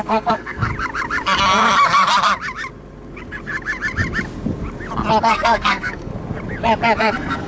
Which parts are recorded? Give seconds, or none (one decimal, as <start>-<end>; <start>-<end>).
0.7-5.2; 6.1-7.0